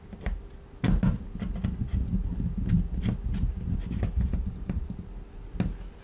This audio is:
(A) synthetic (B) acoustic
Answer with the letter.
B